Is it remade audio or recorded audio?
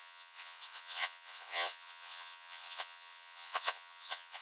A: remade